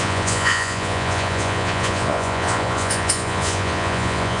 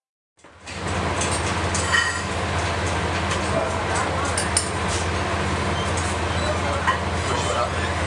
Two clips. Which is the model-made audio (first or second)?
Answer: first